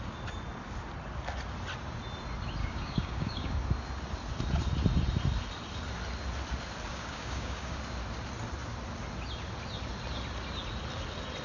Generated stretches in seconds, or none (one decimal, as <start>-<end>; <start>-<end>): 2.6-3.5; 6.9-7.8